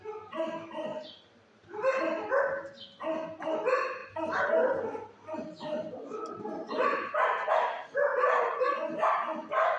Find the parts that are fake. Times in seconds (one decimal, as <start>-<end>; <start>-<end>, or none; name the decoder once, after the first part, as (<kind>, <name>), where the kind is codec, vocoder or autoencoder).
0.9-2.4 (vocoder, BigVGAN v2); 4.0-7.5